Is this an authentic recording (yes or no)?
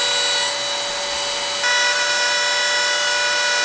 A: yes